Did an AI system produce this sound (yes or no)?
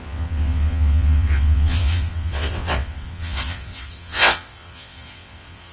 yes